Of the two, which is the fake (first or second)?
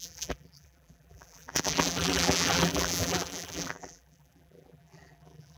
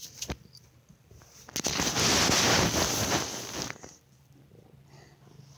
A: first